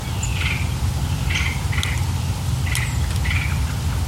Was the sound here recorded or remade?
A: recorded